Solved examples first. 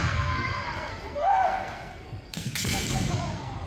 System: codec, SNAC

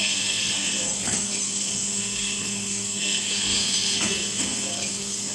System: codec, SNAC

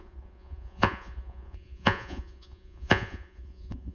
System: vocoder, Vocos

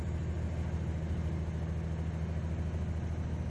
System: none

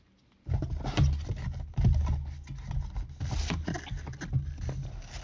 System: none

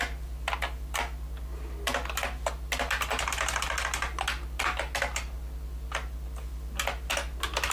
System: none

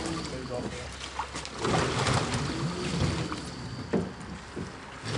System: none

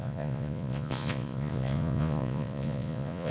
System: vocoder, Vocos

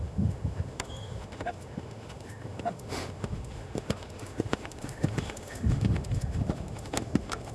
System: autoencoder, DAC-VAE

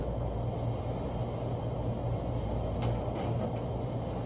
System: none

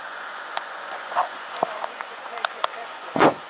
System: vocoder, Vocos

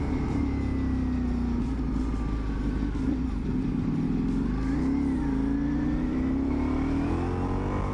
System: none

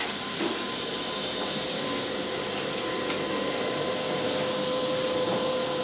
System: none